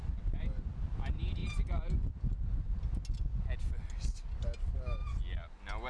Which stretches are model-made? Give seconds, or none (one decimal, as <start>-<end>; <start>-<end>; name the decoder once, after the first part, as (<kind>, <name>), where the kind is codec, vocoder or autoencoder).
none